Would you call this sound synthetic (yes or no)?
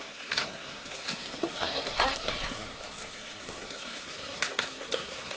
yes